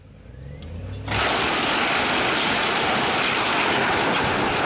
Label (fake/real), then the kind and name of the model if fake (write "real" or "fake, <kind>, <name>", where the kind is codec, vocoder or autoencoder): real